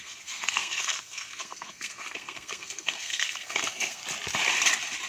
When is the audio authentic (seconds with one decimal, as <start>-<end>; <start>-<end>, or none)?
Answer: 4.0-5.1